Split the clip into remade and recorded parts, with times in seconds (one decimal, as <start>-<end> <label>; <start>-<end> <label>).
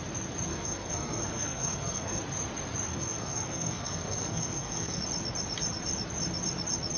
0.0-0.5 recorded; 0.5-2.2 remade; 2.2-2.9 recorded; 2.9-5.0 remade; 5.0-7.0 recorded